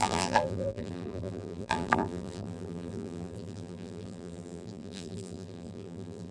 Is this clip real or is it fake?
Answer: fake